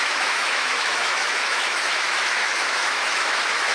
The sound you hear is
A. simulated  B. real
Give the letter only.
A